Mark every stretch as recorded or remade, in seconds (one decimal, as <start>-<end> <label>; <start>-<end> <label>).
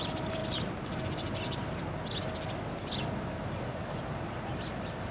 0.0-0.4 remade; 0.4-3.5 recorded; 3.5-5.1 remade